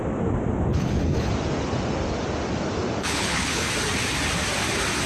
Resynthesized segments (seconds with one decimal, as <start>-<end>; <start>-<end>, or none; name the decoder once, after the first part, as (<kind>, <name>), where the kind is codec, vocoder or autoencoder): 0.7-1.3 (codec, HILCodec); 3.0-3.7

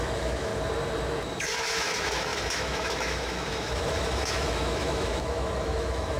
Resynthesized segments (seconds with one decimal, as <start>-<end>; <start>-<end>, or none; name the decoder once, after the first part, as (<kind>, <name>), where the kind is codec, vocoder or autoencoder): 0.0-0.5 (autoencoder, DAC-VAE); 1.4-6.2

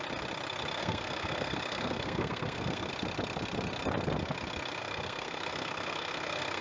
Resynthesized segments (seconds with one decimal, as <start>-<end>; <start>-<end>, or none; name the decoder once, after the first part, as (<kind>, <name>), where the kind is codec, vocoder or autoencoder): 0.8-2.9 (codec, SNAC); 4.8-6.6

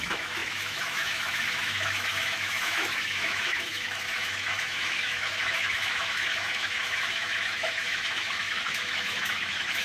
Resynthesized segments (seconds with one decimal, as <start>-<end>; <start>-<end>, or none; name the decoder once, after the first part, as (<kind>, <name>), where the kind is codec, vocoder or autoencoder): 0.0-9.8 (autoencoder, DAC-VAE)

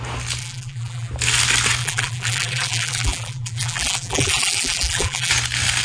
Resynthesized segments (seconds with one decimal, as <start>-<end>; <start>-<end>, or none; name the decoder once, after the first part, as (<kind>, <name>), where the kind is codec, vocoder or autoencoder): 0.4-1.1 (vocoder, BigVGAN v2); 1.8-5.3

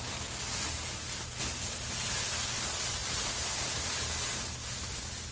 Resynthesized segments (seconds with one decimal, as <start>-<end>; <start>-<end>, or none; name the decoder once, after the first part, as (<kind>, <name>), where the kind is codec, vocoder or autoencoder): none

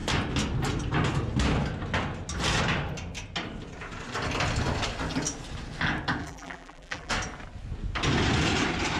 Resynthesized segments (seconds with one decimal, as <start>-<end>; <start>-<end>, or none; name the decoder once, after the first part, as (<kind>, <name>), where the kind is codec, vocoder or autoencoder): 6.2-7.1 (vocoder, BigVGAN v2)

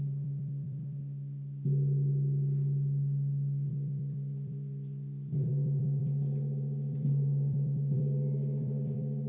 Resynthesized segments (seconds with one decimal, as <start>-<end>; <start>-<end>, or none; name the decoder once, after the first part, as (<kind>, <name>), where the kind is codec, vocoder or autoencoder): 0.0-1.0 (vocoder, BigVGAN v2); 3.7-9.3